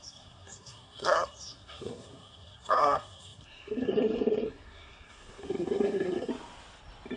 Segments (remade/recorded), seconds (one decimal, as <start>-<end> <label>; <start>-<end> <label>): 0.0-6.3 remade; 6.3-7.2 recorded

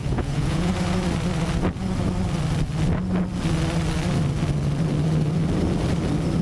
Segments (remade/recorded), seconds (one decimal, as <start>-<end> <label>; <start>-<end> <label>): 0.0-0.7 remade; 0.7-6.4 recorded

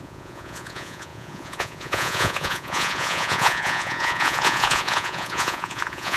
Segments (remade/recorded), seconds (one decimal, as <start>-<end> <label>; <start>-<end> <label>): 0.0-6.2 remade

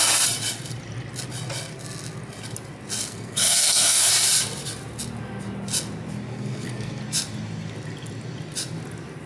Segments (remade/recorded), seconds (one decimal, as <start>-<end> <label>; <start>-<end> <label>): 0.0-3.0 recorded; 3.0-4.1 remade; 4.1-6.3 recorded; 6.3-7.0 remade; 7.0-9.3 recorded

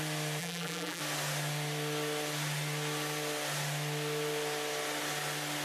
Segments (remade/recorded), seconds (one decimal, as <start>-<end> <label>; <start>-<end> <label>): 0.0-0.4 recorded; 0.4-1.0 remade; 1.0-5.6 recorded